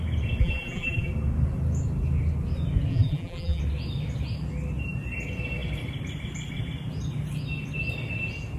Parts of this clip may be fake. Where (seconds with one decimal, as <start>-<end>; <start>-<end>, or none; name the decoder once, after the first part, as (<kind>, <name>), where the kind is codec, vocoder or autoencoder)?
0.4-1.1 (vocoder, BigVGAN v2); 2.9-3.6

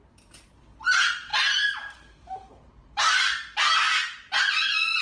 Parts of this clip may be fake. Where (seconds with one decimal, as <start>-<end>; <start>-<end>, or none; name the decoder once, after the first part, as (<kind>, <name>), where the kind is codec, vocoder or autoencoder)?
1.3-2.9 (vocoder, BigVGAN v2)

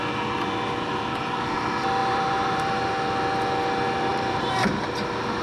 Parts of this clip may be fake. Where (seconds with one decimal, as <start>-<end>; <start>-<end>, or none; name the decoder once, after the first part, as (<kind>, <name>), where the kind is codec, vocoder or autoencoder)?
2.0-2.8 (vocoder, BigVGAN v2); 4.1-4.8

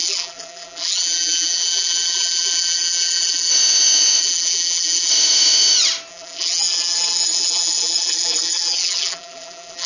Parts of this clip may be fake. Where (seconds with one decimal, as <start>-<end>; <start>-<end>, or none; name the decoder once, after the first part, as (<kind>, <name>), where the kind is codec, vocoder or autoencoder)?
0.0-3.5 (vocoder, BigVGAN v2); 4.2-5.1; 6.1-9.9

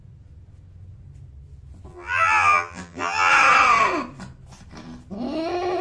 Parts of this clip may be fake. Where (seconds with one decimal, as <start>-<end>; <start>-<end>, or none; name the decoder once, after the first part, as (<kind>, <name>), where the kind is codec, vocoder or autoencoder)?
1.9-3.3 (vocoder, BigVGAN v2)

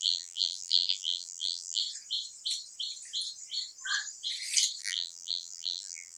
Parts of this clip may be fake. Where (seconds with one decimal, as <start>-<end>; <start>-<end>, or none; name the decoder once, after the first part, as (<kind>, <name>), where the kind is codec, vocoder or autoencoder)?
0.0-1.8 (vocoder, BigVGAN v2); 4.8-6.2

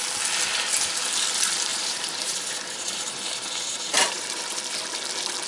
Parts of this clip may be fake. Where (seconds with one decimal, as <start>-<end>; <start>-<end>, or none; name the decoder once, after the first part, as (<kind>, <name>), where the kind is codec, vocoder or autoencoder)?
1.7-4.6 (vocoder, BigVGAN v2)

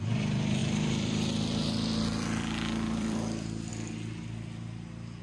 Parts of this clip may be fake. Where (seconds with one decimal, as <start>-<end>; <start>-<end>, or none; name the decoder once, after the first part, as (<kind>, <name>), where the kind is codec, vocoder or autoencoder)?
0.6-3.7 (vocoder, BigVGAN v2)